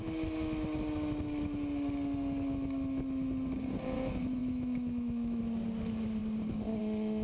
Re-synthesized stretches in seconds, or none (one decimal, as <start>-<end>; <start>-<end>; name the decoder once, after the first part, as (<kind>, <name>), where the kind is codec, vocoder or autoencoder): 4.4-5.4 (autoencoder, DAC-VAE)